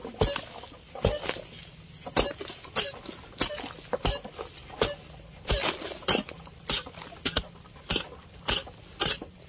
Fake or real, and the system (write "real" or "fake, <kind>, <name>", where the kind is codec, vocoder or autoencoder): real